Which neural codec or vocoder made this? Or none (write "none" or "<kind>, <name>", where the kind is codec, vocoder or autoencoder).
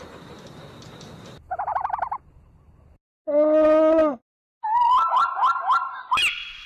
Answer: none